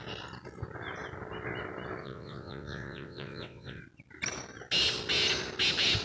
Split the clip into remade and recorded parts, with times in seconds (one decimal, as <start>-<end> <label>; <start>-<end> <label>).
0.0-2.0 recorded; 2.0-3.8 remade; 3.8-6.0 recorded